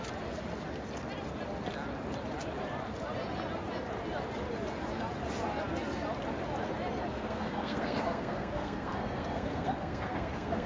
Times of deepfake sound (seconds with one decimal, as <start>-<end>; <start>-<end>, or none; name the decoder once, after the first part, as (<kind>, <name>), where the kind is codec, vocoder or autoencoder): 7.1-10.7 (codec, SNAC)